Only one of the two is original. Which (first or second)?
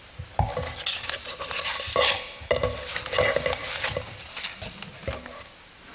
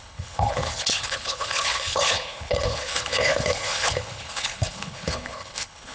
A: first